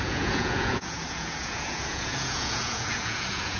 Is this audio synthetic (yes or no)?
yes